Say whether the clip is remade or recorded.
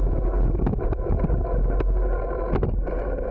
recorded